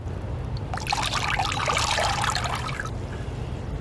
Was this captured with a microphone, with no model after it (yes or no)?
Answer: yes